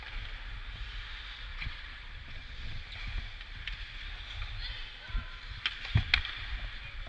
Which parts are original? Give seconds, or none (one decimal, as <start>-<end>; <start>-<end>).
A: 0.0-1.5; 2.9-7.1